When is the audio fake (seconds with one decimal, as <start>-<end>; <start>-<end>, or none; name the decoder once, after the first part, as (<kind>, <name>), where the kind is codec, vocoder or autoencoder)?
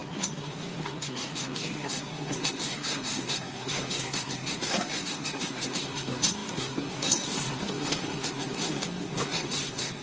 0.0-10.0 (codec, SNAC)